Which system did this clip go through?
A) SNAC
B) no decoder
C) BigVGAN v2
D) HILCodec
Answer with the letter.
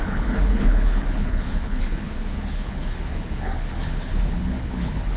D